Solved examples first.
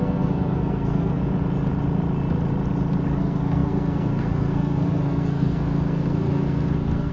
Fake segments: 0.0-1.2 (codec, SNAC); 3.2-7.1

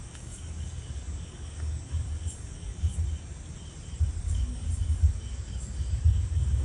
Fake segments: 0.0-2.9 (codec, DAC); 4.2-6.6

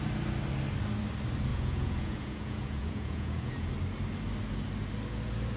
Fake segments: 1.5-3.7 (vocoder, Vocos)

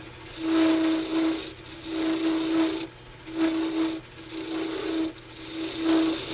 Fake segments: none